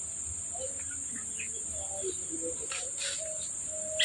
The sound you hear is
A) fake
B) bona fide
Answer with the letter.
B